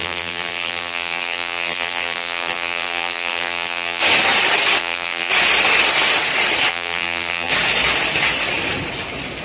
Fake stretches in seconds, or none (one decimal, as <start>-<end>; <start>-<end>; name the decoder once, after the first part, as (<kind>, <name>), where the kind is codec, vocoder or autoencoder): 0.0-4.0 (vocoder, BigVGAN v2); 4.8-5.3; 6.7-7.5